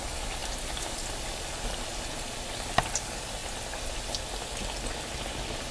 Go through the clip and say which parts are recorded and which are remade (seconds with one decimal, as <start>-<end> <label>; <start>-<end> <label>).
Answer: 0.0-5.7 recorded